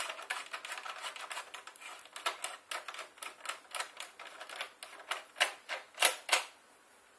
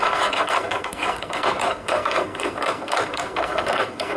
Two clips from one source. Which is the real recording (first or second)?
first